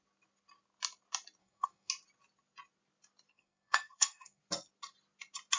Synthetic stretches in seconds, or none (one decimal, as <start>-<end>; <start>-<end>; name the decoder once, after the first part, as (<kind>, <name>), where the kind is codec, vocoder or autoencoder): 1.4-1.9 (codec, SNAC); 3.3-4.4